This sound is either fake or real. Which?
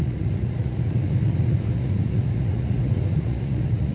fake